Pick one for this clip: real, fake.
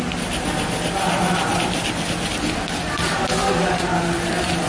real